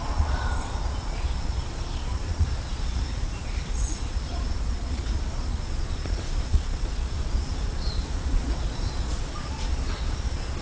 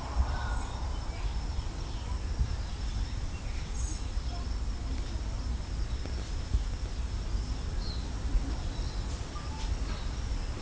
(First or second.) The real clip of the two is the second